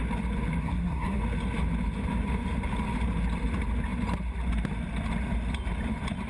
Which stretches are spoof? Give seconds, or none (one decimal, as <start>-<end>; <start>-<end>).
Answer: 0.6-1.2